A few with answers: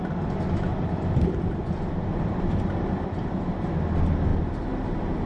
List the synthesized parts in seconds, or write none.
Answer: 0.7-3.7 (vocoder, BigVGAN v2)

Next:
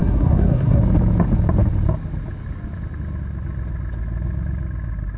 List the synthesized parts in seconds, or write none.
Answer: 0.0-0.8 (codec, SNAC)

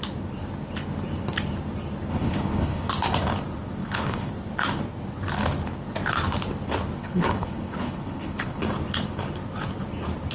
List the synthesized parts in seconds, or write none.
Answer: 2.1-2.9 (codec, HILCodec); 3.8-4.3; 7.0-8.6

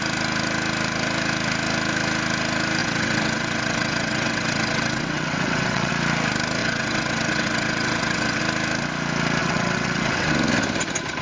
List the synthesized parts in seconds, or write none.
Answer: 2.8-5.9 (vocoder, WaveNeXt); 6.6-8.4; 9.4-10.3

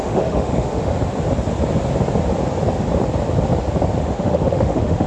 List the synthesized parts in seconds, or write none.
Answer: 0.0-0.9 (autoencoder, DAC-VAE); 4.0-5.1